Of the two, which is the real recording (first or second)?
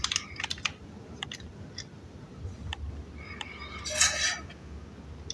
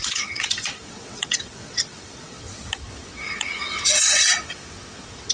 first